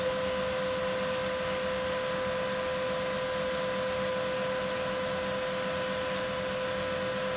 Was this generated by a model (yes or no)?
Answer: no